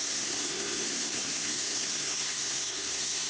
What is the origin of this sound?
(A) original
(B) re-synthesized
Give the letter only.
B